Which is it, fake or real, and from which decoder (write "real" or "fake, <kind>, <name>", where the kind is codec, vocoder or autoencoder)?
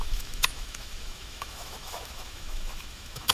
fake, autoencoder, DAC-VAE